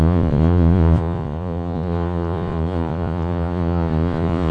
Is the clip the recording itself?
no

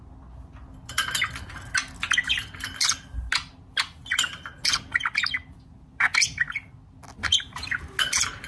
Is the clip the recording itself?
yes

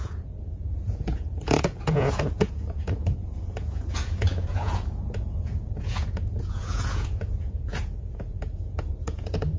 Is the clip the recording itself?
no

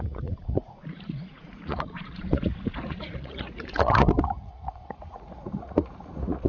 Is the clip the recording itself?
no